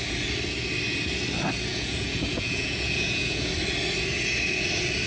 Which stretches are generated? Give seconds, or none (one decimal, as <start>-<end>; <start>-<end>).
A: 1.7-3.5